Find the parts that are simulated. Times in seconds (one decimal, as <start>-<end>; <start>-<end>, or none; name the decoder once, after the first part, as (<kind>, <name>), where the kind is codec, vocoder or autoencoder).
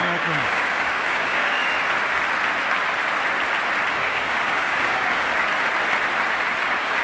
0.0-1.6 (codec, DAC); 3.9-5.3; 6.6-7.0